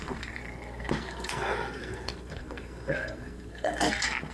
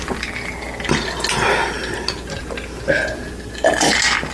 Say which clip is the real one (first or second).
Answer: second